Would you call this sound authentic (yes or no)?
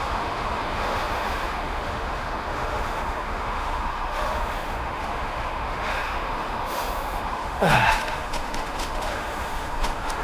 no